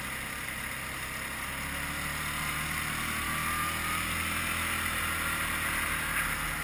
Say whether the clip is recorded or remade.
recorded